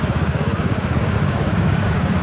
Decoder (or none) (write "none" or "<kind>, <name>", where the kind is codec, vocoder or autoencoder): codec, DAC